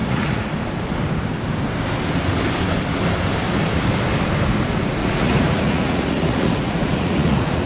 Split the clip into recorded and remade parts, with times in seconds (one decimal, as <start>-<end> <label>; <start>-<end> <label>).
0.0-0.5 remade; 0.5-5.0 recorded; 5.0-7.7 remade